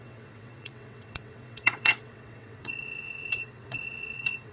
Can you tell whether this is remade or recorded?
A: remade